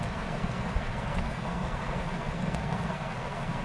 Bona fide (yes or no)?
no